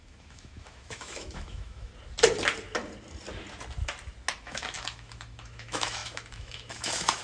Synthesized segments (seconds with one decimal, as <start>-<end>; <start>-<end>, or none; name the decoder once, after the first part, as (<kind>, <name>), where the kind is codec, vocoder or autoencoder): 0.0-1.9 (autoencoder, DAC-VAE); 4.4-7.2